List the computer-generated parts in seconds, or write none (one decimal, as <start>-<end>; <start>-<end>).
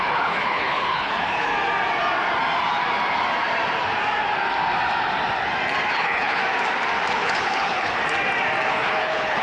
0.0-1.5; 5.9-6.4; 7.1-8.0; 8.7-9.4